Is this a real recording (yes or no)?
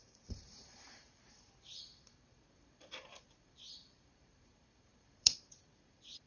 no